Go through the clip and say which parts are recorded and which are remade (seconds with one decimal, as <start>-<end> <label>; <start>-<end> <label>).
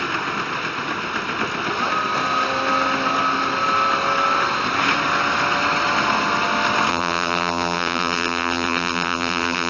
0.0-6.9 recorded; 6.9-9.7 remade